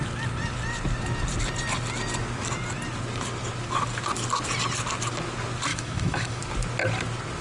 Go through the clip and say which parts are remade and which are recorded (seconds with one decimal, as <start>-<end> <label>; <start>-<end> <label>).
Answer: 0.0-5.7 recorded; 5.7-6.4 remade; 6.4-7.4 recorded